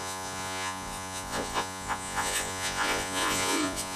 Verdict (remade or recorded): remade